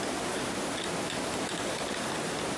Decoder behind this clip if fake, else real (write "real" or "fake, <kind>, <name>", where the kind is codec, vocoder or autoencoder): real